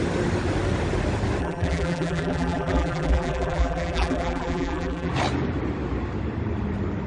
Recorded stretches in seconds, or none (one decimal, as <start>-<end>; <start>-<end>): 0.0-1.4; 5.1-7.1